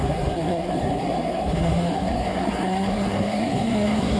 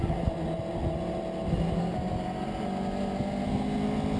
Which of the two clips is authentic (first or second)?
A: second